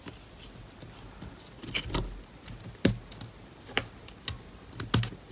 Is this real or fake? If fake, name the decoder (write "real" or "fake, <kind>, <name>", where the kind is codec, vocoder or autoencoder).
real